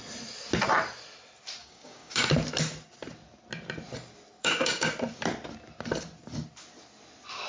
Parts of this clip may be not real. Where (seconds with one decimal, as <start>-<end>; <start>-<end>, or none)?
1.6-2.2; 4.4-4.9